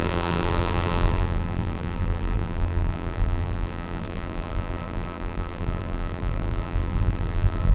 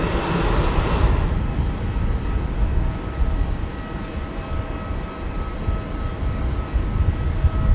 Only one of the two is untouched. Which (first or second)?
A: second